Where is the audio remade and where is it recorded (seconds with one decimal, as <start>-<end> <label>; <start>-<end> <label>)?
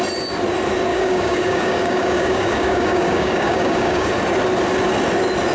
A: 0.0-0.9 recorded; 0.9-4.1 remade; 4.1-5.5 recorded